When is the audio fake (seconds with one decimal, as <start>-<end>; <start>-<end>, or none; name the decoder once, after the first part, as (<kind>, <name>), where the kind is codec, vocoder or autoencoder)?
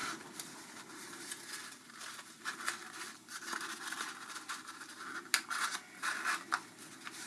none